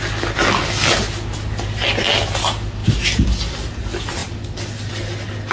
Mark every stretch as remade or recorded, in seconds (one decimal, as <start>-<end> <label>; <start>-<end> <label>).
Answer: 0.0-5.5 recorded